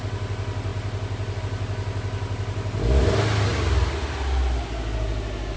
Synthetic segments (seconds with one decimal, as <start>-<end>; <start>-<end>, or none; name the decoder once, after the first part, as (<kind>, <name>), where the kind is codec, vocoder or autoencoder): none